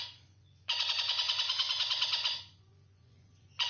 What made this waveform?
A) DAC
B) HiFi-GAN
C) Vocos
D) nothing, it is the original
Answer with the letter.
C